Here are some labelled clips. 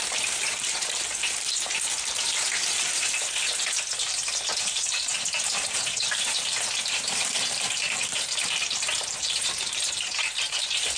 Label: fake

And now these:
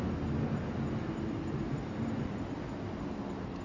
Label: real